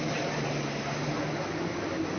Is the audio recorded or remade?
recorded